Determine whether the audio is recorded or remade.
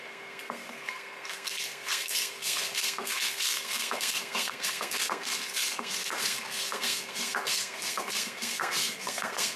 remade